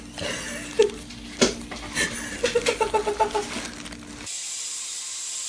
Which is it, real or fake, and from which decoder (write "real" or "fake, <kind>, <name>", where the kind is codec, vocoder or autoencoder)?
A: real